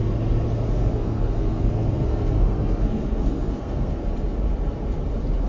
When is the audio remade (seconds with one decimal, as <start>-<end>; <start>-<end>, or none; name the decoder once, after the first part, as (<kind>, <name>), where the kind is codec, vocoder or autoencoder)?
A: 0.8-4.1 (codec, SNAC)